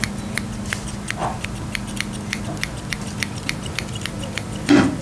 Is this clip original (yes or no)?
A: yes